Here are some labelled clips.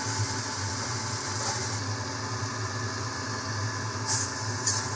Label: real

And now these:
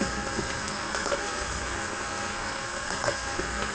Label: fake